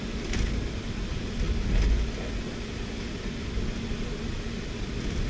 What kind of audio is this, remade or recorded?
recorded